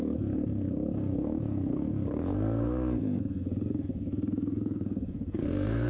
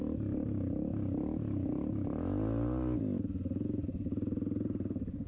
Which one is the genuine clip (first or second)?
second